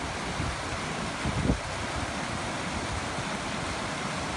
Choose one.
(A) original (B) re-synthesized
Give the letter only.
A